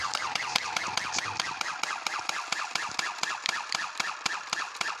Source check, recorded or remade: recorded